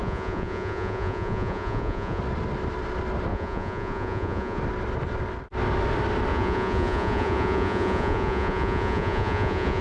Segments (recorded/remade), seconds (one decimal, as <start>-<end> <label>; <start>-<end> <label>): 0.0-2.2 remade; 2.2-3.3 recorded; 3.3-4.6 remade; 4.6-6.3 recorded; 6.3-9.8 remade